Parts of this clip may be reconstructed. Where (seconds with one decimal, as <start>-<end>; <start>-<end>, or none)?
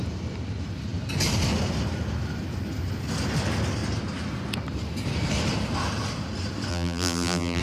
6.7-7.6